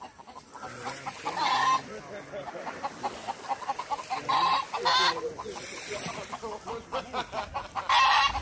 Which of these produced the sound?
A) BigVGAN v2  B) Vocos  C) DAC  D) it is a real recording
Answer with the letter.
D